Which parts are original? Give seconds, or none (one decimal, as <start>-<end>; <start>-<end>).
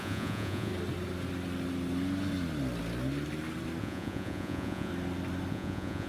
0.7-3.8; 4.9-5.5